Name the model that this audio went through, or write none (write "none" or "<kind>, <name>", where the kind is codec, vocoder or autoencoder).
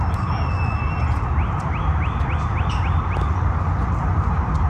none